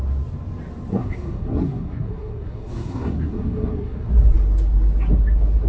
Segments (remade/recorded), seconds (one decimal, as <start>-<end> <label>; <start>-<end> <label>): 0.0-0.9 recorded; 0.9-4.1 remade; 4.1-5.7 recorded